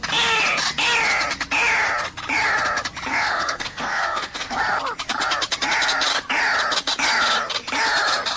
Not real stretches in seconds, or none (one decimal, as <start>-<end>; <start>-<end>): 3.1-4.6